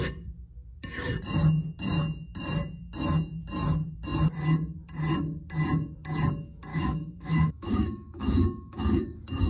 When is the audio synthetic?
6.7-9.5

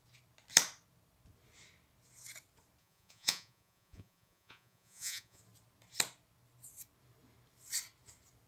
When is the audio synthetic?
2.8-5.4

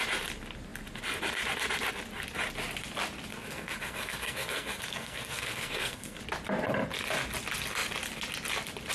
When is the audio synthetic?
3.3-6.2